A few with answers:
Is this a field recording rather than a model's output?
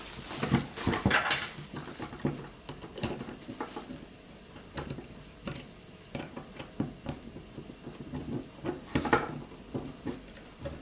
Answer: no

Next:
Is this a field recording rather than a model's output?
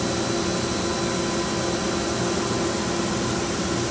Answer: yes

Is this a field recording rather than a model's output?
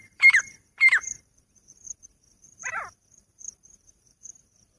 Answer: no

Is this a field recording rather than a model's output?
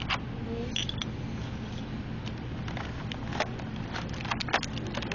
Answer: yes